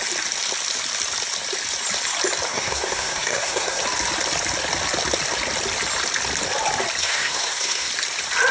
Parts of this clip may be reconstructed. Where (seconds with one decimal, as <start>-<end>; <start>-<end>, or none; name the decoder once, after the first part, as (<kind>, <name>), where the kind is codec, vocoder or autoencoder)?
2.5-3.8 (codec, SNAC); 7.0-7.9